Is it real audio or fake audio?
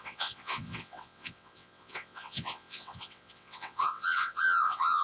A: fake